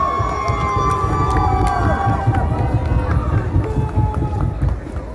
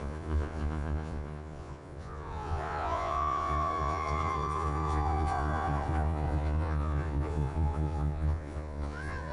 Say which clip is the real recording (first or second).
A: first